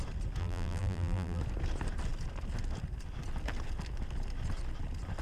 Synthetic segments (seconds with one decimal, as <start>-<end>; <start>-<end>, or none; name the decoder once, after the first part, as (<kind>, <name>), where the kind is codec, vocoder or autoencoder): 0.4-1.4 (vocoder, BigVGAN v2)